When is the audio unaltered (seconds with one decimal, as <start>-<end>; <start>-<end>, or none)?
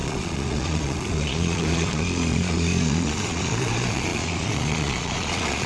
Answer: none